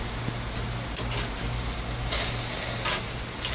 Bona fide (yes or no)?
yes